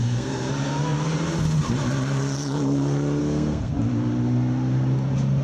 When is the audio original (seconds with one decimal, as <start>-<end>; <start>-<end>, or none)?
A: 0.5-3.2; 3.7-5.4